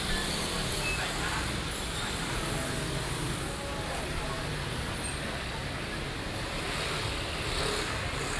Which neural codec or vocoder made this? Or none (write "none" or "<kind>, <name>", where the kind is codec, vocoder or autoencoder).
none